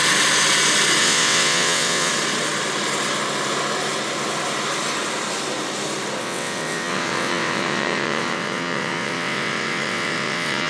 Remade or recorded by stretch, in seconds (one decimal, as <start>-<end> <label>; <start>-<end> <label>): 0.0-1.0 recorded; 1.0-2.1 remade; 2.1-6.2 recorded; 6.2-10.7 remade